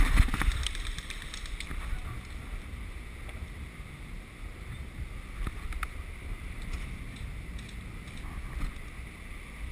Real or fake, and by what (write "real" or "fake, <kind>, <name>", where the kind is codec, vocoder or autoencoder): real